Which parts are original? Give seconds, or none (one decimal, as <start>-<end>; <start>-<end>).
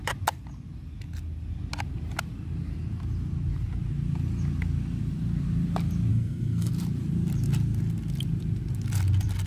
0.0-6.1; 6.7-9.5